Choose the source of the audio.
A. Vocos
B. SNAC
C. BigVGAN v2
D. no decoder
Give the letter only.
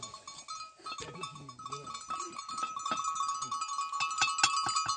D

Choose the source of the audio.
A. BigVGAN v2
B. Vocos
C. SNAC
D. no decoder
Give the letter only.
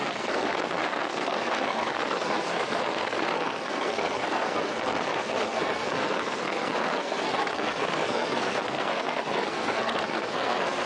C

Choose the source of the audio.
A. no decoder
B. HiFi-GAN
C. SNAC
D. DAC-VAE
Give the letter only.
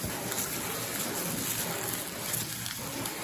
A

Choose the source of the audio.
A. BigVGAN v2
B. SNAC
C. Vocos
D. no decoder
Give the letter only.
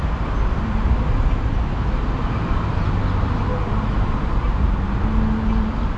D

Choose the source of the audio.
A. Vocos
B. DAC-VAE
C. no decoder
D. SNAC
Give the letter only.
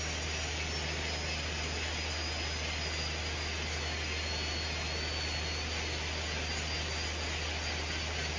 C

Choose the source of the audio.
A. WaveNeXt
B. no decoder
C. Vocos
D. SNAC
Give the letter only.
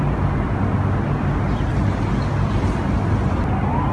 B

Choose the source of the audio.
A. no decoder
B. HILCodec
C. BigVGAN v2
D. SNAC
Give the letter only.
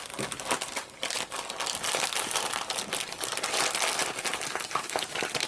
A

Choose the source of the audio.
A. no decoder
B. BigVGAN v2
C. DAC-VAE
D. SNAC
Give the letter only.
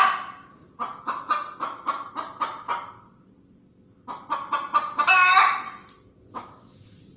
A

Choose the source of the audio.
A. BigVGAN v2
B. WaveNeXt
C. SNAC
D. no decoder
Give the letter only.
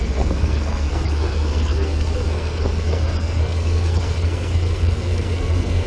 C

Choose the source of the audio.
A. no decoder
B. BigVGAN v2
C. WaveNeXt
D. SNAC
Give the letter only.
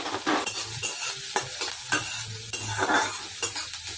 A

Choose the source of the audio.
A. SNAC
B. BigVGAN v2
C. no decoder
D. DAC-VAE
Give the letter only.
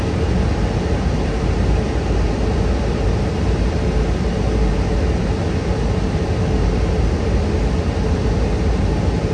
C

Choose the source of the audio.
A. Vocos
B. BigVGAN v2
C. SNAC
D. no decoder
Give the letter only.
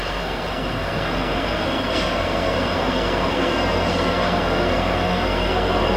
C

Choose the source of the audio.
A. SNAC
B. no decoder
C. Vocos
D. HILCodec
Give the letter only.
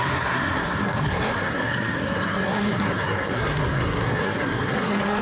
A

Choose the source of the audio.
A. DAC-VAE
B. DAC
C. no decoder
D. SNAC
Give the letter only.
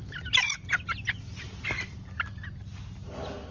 C